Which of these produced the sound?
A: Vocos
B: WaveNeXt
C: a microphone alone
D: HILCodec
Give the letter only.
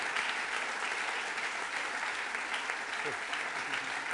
C